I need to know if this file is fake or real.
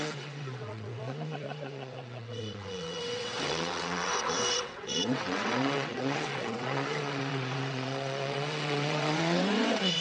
fake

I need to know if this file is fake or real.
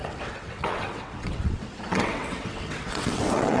fake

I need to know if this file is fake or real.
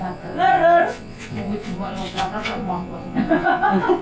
fake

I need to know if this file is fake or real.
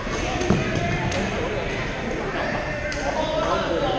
real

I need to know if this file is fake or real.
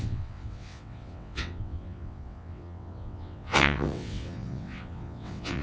fake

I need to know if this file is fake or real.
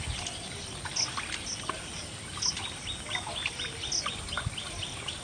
real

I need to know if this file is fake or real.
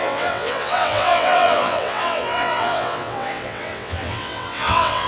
fake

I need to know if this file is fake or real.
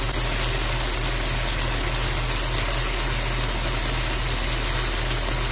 real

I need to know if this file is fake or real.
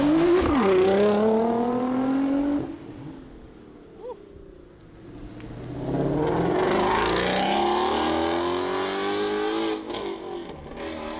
real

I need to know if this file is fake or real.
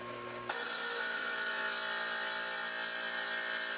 real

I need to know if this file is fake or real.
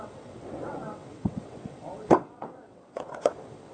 fake